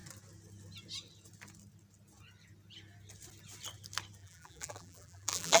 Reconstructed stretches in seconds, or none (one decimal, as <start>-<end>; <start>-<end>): 4.2-5.6